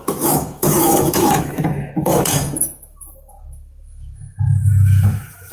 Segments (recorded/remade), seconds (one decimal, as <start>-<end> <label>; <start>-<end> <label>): 0.0-5.5 remade